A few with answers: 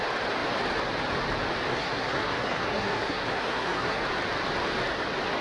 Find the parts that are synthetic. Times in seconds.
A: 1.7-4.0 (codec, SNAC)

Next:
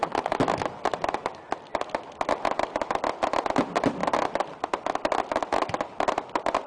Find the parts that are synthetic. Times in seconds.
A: none

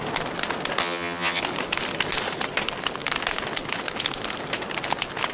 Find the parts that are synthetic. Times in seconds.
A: 0.8-1.4 (vocoder, HiFi-GAN)

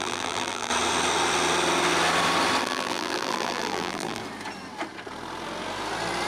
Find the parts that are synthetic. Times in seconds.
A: 0.0-0.7 (vocoder, BigVGAN v2); 2.6-4.2

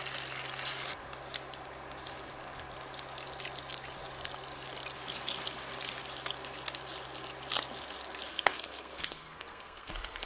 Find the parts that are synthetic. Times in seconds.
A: 8.3-9.9 (codec, SNAC)

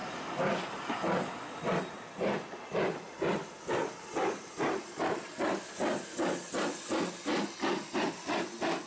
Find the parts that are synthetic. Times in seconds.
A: none

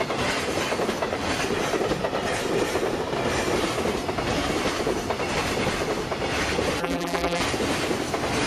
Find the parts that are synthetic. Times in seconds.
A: 6.8-7.4 (vocoder, BigVGAN v2)